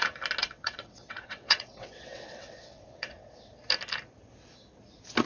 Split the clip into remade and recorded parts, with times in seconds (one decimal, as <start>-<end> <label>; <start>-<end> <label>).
0.0-0.4 recorded; 0.4-3.5 remade; 3.5-5.2 recorded